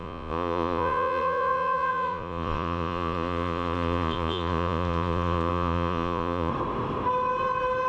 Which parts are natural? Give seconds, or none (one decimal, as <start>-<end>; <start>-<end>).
6.5-7.9